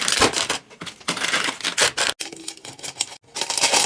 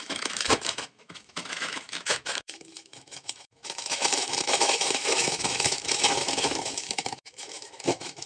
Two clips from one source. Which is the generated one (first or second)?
second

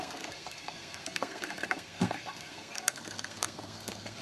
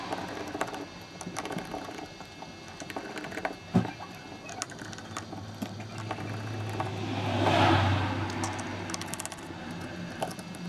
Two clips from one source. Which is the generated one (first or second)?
first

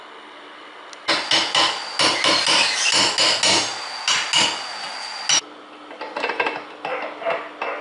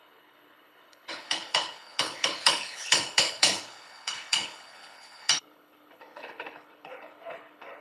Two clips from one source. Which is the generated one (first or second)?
second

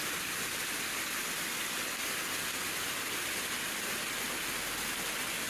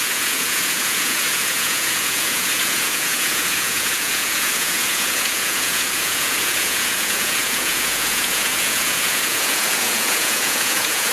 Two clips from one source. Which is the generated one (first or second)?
second